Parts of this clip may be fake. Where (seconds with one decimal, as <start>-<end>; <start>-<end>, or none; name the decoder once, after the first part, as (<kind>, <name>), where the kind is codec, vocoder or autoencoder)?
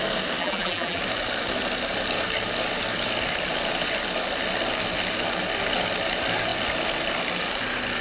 0.4-1.0 (vocoder, BigVGAN v2)